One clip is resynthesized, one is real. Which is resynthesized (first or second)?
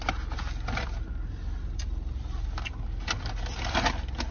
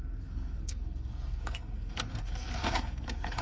second